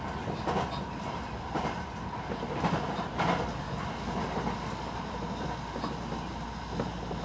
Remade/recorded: recorded